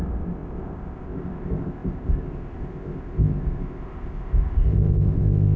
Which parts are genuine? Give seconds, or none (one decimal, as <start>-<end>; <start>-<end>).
none